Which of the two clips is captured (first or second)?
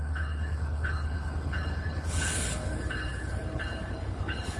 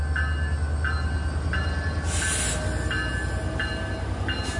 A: second